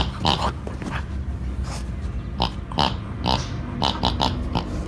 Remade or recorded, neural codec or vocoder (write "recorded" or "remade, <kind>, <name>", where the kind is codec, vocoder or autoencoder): recorded